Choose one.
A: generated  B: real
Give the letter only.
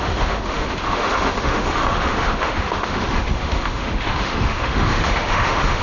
A